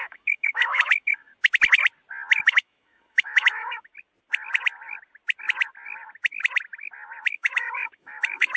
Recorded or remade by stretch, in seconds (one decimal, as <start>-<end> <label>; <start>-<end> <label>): 0.0-1.3 remade; 1.3-2.4 recorded; 2.4-3.9 remade; 3.9-7.3 recorded; 7.3-8.6 remade